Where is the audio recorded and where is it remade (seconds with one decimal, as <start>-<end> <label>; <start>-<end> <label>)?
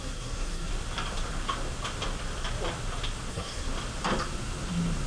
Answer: 0.0-0.7 remade; 0.7-3.3 recorded; 3.3-3.7 remade; 3.7-5.1 recorded